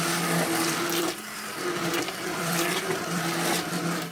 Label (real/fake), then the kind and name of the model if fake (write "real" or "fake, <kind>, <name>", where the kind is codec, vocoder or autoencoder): fake, vocoder, BigVGAN v2